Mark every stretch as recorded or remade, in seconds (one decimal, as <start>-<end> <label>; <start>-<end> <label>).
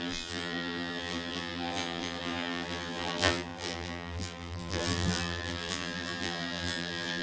0.0-7.2 remade